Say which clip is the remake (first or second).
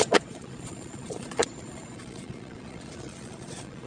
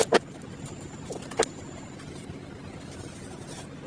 first